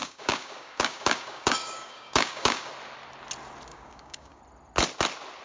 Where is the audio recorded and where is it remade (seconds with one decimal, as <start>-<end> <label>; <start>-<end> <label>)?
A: 0.0-2.7 remade; 2.7-3.7 recorded; 3.7-4.4 remade; 4.4-5.4 recorded